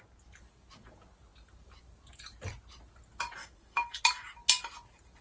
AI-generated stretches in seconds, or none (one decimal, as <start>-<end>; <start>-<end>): 3.4-4.0